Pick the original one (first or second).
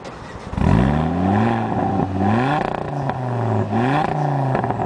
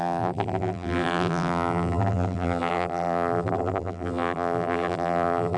first